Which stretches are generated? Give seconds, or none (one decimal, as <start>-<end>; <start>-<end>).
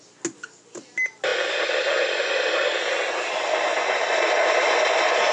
3.7-5.3